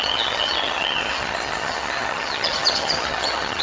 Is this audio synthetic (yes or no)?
yes